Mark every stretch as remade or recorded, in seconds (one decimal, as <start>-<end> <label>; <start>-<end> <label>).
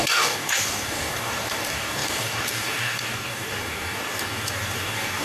0.0-5.2 remade